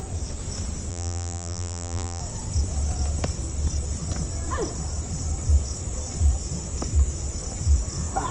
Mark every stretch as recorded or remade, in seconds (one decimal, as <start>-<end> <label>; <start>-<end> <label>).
0.0-0.9 recorded; 0.9-2.2 remade; 2.2-8.3 recorded